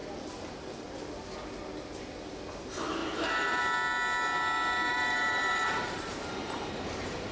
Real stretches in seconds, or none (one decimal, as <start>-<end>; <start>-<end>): 0.0-3.0; 3.6-4.9